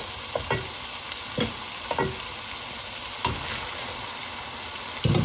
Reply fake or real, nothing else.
real